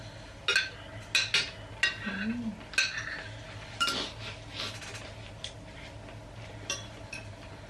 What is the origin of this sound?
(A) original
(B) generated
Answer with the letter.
A